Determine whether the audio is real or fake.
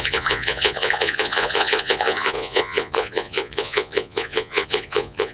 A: fake